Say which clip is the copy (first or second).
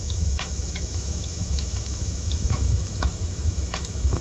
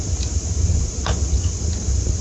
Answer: first